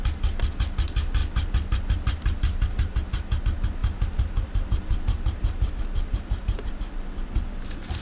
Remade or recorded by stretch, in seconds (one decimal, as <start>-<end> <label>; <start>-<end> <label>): 0.0-1.2 recorded; 1.2-3.4 remade; 3.4-3.8 recorded; 3.8-6.8 remade; 6.8-8.0 recorded